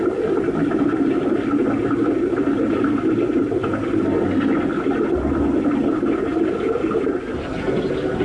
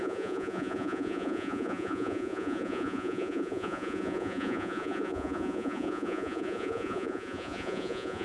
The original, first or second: first